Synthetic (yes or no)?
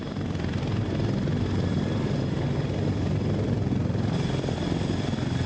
no